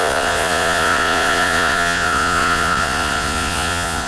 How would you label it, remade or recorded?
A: remade